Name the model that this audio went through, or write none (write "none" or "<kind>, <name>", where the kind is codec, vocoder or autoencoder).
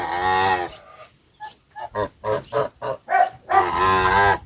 none